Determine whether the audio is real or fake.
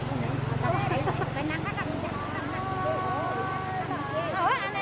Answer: real